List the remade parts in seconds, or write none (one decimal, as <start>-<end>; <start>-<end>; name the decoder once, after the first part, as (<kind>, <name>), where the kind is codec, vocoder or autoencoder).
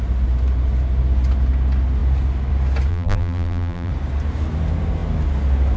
2.9-3.9 (vocoder, BigVGAN v2)